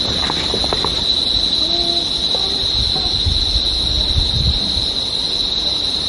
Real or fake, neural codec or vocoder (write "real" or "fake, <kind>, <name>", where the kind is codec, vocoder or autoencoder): real